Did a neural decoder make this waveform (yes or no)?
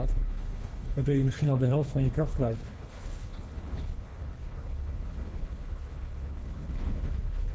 yes